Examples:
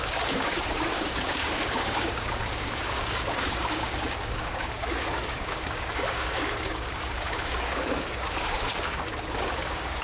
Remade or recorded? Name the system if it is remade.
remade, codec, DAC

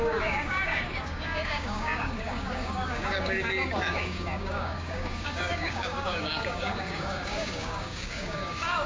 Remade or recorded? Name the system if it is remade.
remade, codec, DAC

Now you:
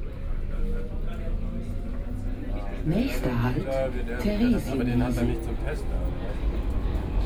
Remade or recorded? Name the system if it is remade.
recorded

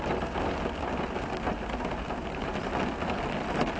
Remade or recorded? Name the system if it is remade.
recorded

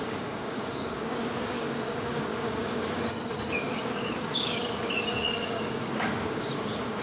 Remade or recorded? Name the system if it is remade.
remade, codec, DAC